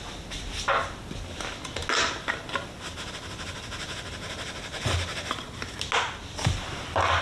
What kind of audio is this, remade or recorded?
recorded